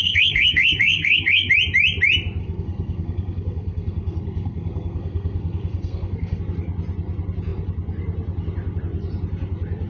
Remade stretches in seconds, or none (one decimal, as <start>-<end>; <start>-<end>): 0.0-1.5; 2.4-6.4